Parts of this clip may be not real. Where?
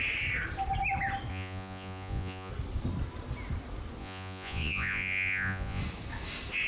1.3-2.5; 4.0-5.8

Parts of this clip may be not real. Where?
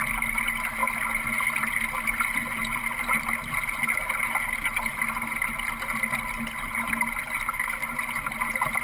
none